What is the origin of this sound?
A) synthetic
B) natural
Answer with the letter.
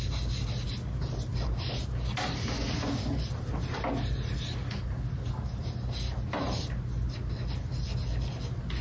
B